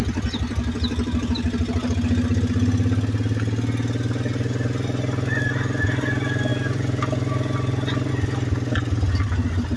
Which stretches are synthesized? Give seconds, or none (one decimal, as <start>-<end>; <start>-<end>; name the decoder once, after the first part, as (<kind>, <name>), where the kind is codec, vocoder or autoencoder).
none

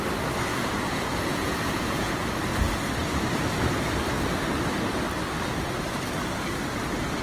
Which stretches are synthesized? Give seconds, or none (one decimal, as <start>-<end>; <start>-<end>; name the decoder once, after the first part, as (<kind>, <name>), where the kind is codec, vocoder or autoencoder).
0.5-2.1 (vocoder, Vocos)

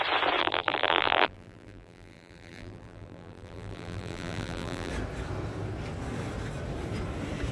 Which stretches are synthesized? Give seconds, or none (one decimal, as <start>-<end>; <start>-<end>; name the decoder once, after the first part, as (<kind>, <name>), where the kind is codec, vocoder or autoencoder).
0.4-4.9 (vocoder, BigVGAN v2)

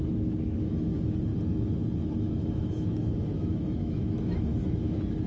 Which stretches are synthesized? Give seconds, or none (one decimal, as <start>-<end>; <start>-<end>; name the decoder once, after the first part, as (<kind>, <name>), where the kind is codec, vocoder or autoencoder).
0.0-1.3 (autoencoder, DAC-VAE); 2.1-5.3

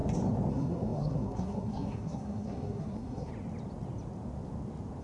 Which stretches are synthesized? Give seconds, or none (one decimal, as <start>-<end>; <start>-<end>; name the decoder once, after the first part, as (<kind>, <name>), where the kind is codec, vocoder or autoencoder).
0.5-3.3 (codec, SNAC)

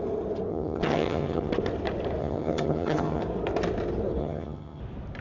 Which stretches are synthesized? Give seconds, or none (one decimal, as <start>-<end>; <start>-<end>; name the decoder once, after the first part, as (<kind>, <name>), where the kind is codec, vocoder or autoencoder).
0.5-1.5 (vocoder, HiFi-GAN); 2.2-3.2; 4.2-4.8

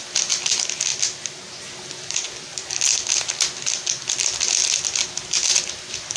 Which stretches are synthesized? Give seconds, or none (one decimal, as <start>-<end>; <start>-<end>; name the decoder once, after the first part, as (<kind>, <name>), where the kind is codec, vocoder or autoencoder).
none